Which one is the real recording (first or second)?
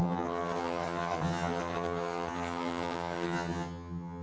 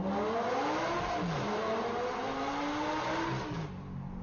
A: second